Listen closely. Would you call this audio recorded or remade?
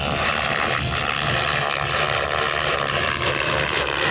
recorded